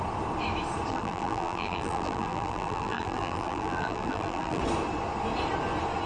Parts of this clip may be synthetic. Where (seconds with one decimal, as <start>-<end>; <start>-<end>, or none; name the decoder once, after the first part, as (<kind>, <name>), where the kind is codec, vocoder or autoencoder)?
0.9-4.6 (vocoder, BigVGAN v2)